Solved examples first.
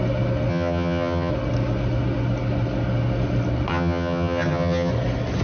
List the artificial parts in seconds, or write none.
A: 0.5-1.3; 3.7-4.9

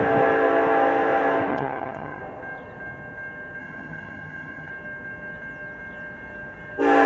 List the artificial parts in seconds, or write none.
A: 1.5-2.2; 3.6-4.7

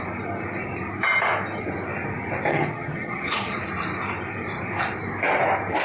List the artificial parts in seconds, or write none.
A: 2.5-3.6

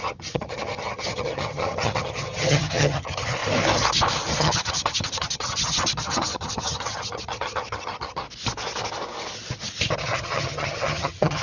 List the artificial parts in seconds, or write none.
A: 0.0-3.4; 4.4-8.2; 10.0-11.4

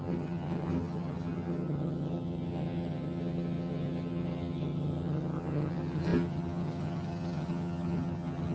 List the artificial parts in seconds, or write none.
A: 0.0-8.5

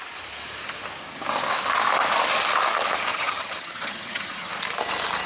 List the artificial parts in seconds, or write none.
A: 3.1-4.5